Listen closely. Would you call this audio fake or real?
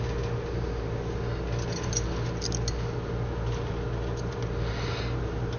real